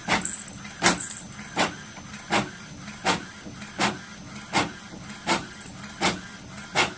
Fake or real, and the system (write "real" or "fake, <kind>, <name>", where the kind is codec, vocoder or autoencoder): real